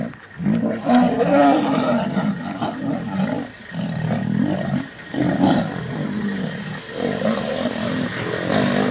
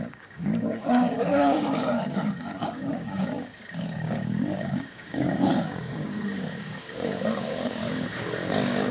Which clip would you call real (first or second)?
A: first